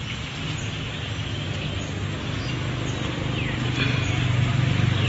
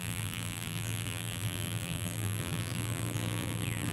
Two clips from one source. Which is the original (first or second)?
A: first